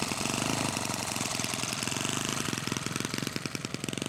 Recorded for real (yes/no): yes